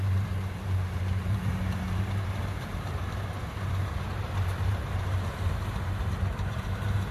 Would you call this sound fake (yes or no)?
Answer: yes